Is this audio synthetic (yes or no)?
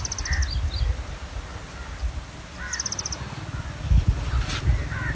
no